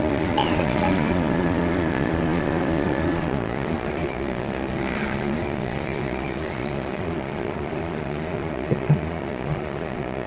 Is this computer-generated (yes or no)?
yes